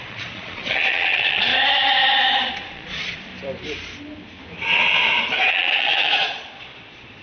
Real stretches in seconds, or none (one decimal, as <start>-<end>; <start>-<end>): 1.5-2.5; 3.3-5.5